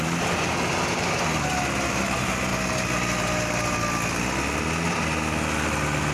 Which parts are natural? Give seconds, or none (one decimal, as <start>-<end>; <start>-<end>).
0.0-6.1